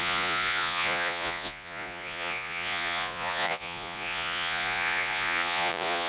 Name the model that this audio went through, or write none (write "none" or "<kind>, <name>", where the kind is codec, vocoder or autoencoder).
vocoder, Vocos